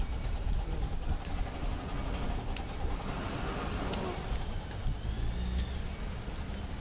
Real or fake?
real